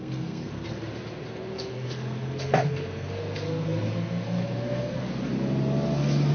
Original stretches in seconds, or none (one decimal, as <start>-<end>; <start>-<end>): 0.8-1.3; 5.0-6.3